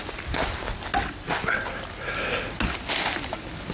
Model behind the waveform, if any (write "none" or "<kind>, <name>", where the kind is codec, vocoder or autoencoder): none